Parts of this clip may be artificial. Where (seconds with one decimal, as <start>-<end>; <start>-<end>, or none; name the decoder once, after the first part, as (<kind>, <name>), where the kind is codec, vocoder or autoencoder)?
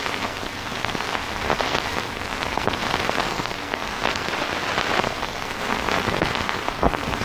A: 0.0-4.3 (codec, SNAC); 5.0-7.2